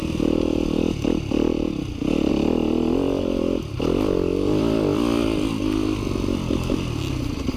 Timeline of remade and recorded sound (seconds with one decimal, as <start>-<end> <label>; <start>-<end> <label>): 0.0-7.6 recorded